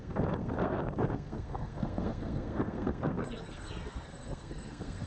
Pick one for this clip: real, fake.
fake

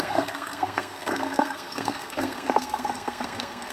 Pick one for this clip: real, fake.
fake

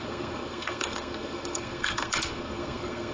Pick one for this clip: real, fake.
fake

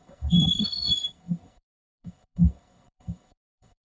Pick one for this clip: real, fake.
fake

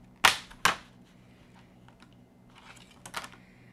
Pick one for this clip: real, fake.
real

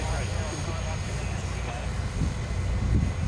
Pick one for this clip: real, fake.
real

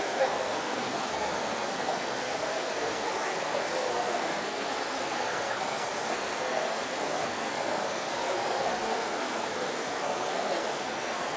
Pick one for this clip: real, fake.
fake